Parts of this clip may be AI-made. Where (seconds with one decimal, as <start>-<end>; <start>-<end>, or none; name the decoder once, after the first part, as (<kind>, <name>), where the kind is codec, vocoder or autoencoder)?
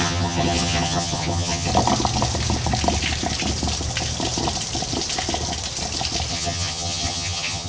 0.0-1.7 (vocoder, HiFi-GAN); 6.3-7.7